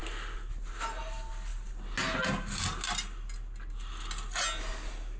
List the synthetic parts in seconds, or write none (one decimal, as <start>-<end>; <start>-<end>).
none

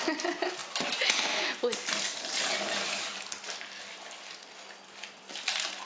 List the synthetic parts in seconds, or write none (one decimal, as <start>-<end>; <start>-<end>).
none

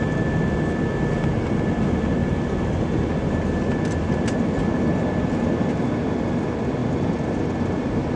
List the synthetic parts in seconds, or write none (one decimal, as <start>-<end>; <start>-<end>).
none

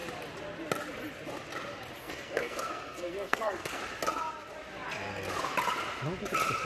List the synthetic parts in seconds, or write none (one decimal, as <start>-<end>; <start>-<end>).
2.0-3.8